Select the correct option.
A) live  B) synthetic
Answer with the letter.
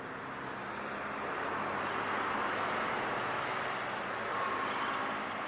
A